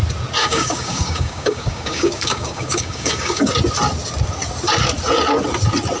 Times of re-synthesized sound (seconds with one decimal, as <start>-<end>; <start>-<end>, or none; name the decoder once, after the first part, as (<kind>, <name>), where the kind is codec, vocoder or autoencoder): 0.4-3.5 (codec, DAC)